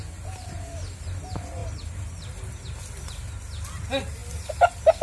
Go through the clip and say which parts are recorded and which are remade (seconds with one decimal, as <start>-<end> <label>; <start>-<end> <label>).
0.0-5.0 recorded